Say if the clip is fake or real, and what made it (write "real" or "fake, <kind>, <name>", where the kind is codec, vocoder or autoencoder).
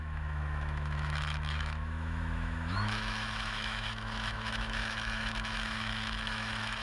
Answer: fake, autoencoder, DAC-VAE